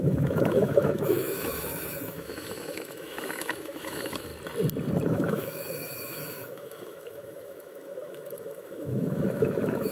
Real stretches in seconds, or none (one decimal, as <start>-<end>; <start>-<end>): 4.3-5.1

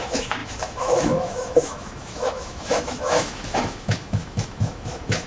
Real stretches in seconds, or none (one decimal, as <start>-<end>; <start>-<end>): none

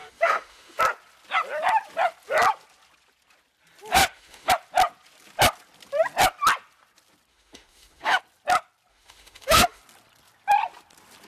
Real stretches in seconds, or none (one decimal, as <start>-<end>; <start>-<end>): 0.8-4.0; 4.5-7.3; 8.2-8.9; 9.8-11.3